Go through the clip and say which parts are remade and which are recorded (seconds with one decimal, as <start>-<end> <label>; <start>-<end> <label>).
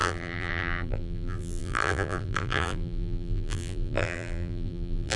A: 0.0-5.2 remade